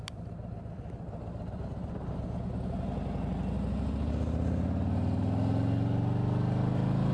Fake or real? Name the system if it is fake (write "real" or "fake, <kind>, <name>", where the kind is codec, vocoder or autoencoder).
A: real